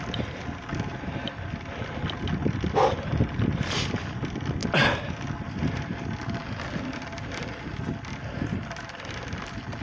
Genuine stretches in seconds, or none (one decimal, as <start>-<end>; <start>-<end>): 0.0-9.8